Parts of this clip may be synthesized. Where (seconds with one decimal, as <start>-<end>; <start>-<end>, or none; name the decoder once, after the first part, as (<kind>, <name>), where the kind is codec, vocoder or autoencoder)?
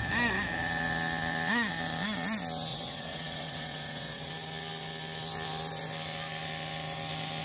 2.7-4.3 (vocoder, WaveNeXt)